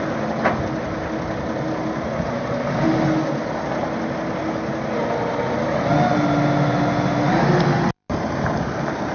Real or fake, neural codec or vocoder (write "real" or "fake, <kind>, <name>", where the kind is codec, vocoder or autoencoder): real